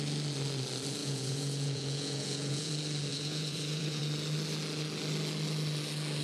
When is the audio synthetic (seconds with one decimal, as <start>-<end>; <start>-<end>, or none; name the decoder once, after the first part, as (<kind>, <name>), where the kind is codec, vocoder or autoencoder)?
1.0-2.7 (vocoder, Vocos); 3.1-4.0